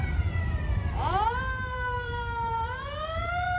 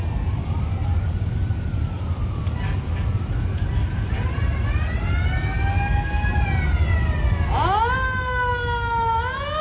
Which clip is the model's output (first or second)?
first